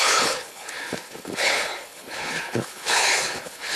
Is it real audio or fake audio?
fake